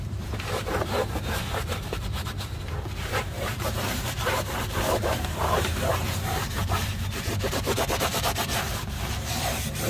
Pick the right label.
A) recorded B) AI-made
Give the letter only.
B